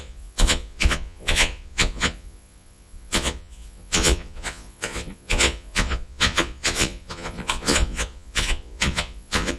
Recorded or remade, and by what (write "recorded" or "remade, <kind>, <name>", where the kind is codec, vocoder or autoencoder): remade, vocoder, Vocos